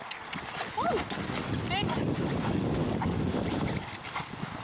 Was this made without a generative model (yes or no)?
yes